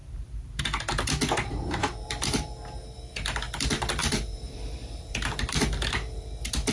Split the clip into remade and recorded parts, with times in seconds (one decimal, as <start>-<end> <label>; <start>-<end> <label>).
0.0-0.6 remade; 0.6-1.8 recorded; 1.8-2.3 remade; 2.3-4.0 recorded; 4.0-5.6 remade; 5.6-6.7 recorded